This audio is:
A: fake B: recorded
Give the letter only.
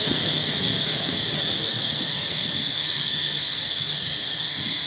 A